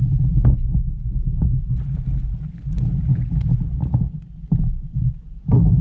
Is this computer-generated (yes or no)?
no